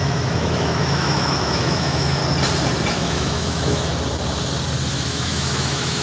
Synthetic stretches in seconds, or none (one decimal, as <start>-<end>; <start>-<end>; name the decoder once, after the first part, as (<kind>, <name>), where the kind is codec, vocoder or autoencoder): 0.0-2.2 (autoencoder, DAC-VAE); 2.9-3.9; 4.9-6.0